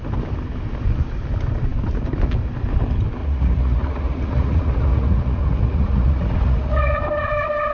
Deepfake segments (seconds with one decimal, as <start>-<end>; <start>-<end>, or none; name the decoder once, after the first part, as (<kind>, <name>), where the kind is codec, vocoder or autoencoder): 3.2-7.0 (vocoder, Vocos)